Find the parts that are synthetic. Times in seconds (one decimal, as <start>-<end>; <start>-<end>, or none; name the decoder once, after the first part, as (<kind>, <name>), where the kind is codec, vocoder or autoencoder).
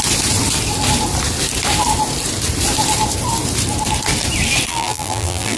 4.7-5.6 (vocoder, BigVGAN v2)